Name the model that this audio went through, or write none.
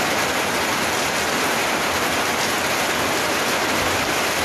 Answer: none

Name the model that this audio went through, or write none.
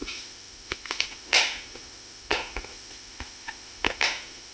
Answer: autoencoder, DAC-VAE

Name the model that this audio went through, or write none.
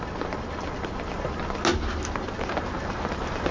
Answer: none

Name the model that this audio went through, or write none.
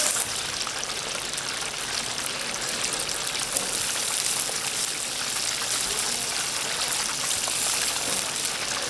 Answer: none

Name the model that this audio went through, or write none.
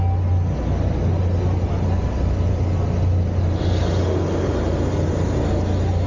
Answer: none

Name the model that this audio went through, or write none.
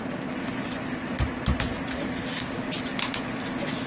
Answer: none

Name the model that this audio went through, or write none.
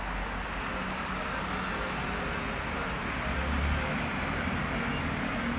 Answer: none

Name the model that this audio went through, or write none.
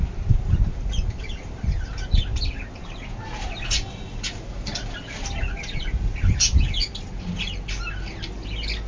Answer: none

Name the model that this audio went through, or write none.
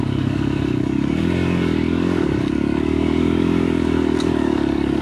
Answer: codec, DAC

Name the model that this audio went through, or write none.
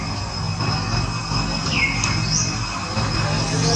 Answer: none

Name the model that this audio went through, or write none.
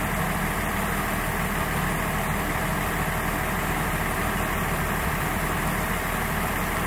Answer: none